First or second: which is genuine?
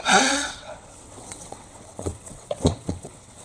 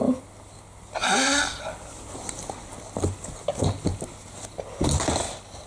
second